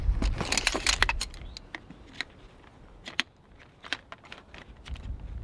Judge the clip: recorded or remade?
recorded